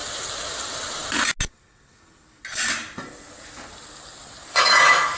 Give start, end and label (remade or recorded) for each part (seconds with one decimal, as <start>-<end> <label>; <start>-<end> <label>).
0.0-4.5 recorded; 4.5-5.2 remade